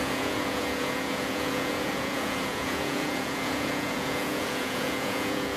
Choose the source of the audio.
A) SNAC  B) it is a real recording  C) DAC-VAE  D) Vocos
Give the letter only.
D